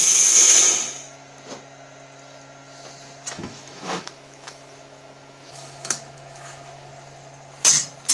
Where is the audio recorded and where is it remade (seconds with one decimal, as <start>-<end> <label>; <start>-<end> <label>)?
0.0-0.6 remade; 0.6-3.3 recorded; 3.3-6.9 remade; 6.9-8.1 recorded